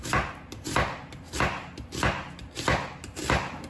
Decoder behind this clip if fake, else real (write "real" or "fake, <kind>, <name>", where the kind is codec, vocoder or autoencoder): real